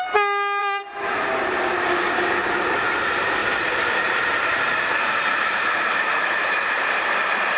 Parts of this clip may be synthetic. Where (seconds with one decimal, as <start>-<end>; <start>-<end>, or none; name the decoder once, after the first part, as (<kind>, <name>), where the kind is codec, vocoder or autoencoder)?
0.6-1.6 (vocoder, BigVGAN v2); 3.4-7.6